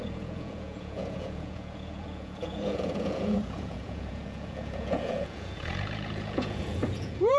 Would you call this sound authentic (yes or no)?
no